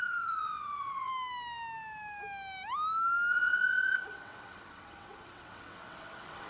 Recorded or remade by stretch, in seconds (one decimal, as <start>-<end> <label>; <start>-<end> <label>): 0.0-1.1 remade; 1.1-3.3 recorded; 3.3-6.5 remade